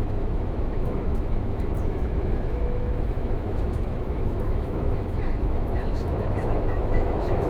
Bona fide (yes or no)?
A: no